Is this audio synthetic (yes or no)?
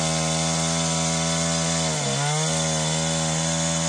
no